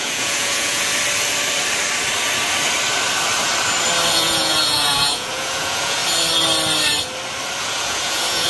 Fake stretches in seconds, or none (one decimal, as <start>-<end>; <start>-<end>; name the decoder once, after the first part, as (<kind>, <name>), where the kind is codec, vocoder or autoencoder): 0.0-0.9 (vocoder, Vocos); 4.1-6.0; 7.6-8.5